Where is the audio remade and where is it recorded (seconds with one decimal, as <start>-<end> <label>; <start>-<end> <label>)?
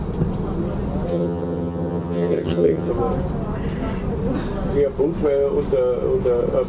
0.0-1.1 recorded; 1.1-2.9 remade; 2.9-6.7 recorded